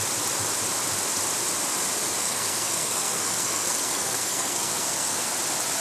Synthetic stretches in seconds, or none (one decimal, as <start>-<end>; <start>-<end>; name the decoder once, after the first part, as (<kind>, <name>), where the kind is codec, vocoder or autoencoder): 2.2-5.3 (codec, SNAC)